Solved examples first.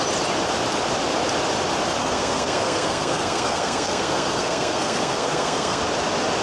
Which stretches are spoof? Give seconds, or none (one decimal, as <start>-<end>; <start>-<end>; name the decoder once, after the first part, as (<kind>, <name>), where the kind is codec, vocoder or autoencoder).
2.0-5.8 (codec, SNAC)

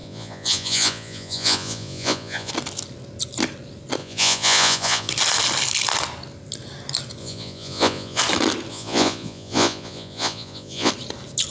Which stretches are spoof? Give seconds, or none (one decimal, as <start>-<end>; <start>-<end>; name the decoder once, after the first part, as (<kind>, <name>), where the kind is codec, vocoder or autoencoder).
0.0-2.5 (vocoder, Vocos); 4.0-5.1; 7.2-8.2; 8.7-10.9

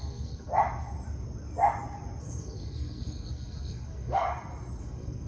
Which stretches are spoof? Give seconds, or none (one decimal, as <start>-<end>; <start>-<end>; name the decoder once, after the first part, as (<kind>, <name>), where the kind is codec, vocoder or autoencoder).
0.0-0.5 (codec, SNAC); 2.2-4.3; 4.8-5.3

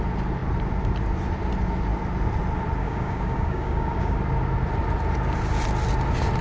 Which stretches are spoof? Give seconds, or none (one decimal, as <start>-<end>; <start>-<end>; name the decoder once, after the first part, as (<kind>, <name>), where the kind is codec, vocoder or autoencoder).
2.8-4.2 (codec, DAC)

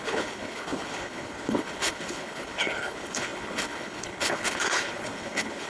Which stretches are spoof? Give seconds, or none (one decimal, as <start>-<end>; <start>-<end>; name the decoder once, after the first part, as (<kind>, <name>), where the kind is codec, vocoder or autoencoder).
0.0-5.7 (codec, HILCodec)

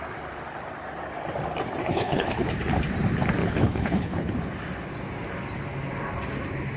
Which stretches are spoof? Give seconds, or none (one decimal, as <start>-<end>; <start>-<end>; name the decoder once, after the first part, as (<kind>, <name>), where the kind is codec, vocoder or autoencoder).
1.8-2.5 (codec, HILCodec); 3.4-4.3